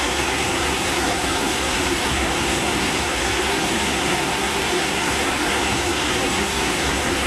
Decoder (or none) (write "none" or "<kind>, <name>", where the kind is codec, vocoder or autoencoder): codec, SNAC